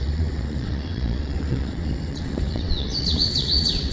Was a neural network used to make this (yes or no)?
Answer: yes